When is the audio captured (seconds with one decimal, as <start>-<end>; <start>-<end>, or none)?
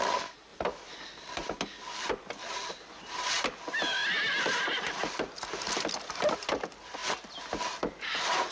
0.0-0.5; 2.1-7.0; 7.6-8.5